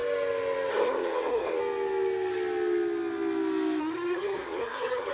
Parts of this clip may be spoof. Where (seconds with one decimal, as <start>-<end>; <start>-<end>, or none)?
0.7-1.6; 3.8-5.1

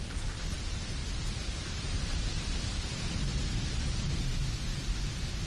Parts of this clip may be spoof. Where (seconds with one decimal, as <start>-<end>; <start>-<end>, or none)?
none

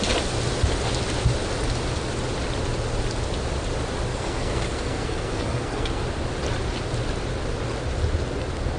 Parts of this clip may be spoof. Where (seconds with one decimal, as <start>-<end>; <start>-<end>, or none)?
4.1-6.0

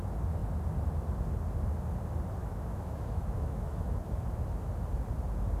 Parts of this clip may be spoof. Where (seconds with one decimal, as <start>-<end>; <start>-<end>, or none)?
2.4-4.0

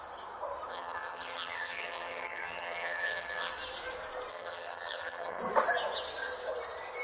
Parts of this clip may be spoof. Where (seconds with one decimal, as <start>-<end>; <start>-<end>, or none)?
0.7-3.5; 4.3-5.4